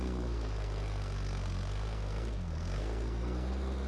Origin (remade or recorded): remade